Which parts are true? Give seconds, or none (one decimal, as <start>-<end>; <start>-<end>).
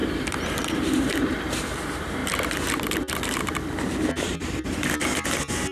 0.0-5.7